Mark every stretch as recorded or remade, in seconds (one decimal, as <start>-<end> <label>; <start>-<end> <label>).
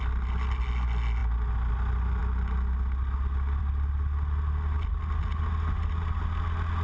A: 0.0-6.8 recorded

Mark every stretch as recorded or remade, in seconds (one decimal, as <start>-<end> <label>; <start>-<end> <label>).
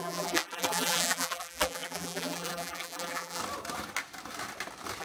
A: 0.0-3.4 remade; 3.4-5.0 recorded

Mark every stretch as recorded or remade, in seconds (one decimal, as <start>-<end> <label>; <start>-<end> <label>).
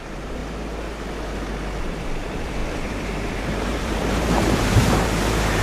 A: 0.0-0.4 remade; 0.4-1.8 recorded; 1.8-5.6 remade